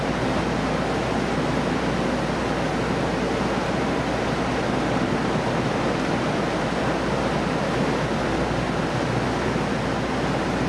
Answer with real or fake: real